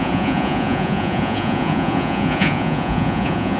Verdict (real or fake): fake